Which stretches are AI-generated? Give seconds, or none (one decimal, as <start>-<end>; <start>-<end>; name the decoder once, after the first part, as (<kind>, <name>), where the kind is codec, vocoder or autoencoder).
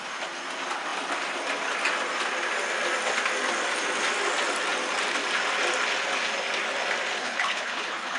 7.2-8.2 (codec, HILCodec)